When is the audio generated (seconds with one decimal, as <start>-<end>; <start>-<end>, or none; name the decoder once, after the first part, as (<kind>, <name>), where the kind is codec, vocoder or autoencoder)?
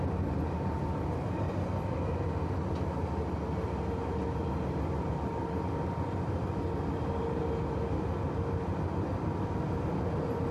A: none